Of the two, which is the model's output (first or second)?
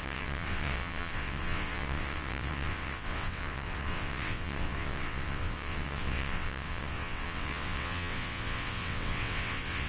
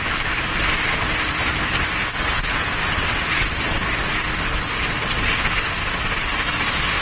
first